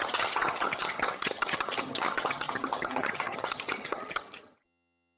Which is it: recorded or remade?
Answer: remade